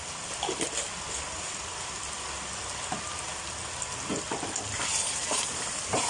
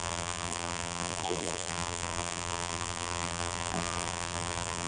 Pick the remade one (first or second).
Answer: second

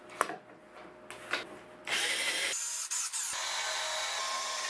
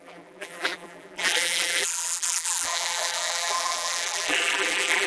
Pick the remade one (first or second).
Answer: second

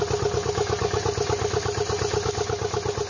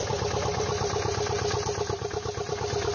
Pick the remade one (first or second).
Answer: second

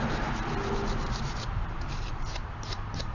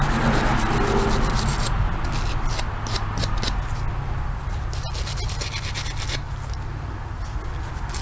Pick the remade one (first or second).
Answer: first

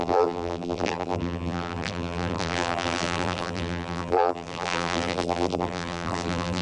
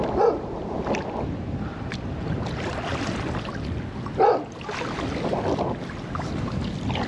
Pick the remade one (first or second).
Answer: first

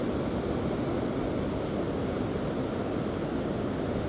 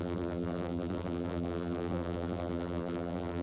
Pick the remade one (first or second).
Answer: second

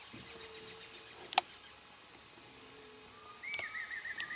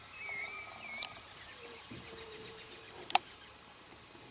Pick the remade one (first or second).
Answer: second